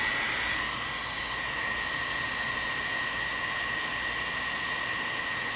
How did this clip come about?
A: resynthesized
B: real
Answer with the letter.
B